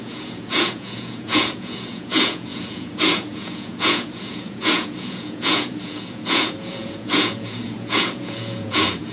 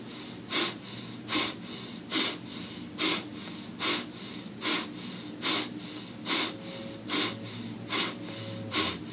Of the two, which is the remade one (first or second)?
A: first